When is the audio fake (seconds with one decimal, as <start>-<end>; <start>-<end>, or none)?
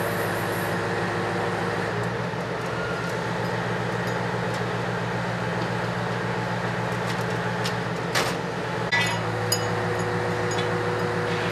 none